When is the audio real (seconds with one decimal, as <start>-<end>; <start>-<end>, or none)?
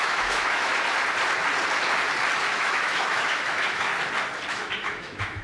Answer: 0.7-2.5; 3.9-4.5